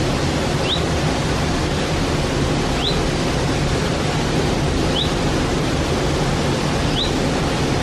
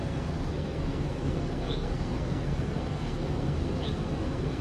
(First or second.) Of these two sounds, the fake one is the second